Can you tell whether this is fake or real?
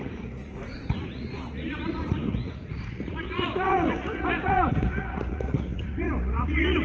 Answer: fake